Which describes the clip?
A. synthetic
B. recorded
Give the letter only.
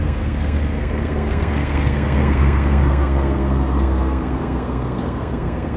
A